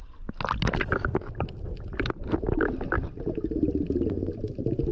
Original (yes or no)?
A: yes